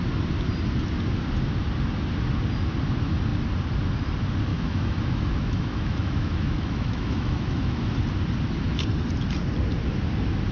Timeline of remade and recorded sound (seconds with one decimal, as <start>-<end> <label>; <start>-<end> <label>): 0.0-4.5 recorded; 4.5-7.9 remade; 7.9-10.5 recorded